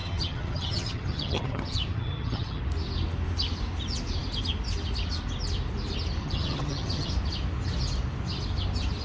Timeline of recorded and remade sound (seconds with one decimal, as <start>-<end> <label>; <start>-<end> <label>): 0.0-2.6 remade; 2.6-6.2 recorded; 6.2-7.1 remade; 7.1-9.0 recorded